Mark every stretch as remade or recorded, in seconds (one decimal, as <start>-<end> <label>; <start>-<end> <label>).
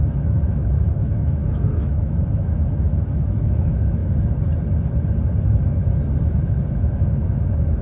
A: 0.0-4.0 remade; 4.0-6.2 recorded; 6.2-7.8 remade